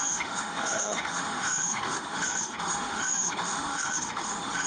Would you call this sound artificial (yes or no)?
yes